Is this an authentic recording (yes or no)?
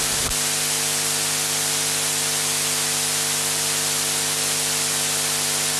yes